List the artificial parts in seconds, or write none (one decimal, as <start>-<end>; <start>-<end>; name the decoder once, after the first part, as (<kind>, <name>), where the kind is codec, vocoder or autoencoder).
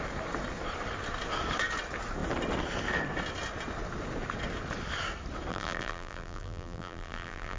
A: 5.5-7.6 (vocoder, BigVGAN v2)